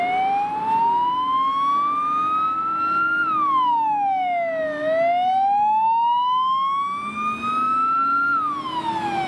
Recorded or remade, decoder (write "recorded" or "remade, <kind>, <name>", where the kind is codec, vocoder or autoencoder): recorded